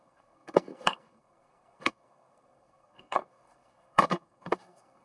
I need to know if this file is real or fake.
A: fake